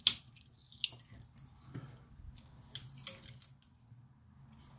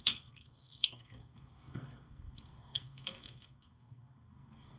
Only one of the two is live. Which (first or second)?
first